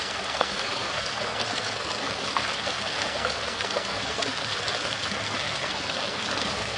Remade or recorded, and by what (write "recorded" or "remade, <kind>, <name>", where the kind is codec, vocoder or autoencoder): remade, codec, SNAC